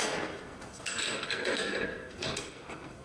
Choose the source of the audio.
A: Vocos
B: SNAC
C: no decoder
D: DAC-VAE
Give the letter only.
B